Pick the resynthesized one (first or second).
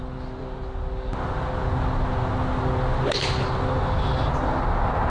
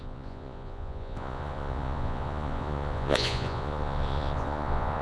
second